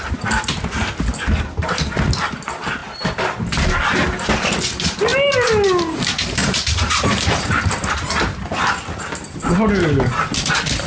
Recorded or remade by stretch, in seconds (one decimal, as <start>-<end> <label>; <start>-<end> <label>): 0.0-6.4 recorded; 6.4-8.1 remade; 8.1-10.9 recorded